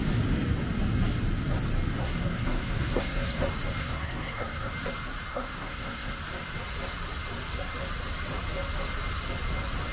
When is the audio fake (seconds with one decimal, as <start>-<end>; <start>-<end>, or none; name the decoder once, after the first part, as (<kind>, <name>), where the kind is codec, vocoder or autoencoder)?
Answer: 2.0-3.4 (codec, SNAC); 3.8-4.7; 5.3-6.2